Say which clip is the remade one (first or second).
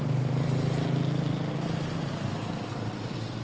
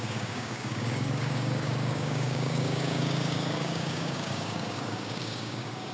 second